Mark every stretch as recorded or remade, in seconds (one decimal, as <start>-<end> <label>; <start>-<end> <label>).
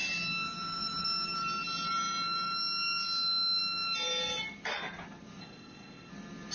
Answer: 0.0-5.4 recorded; 5.4-6.1 remade; 6.1-6.5 recorded